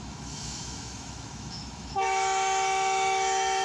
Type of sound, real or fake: fake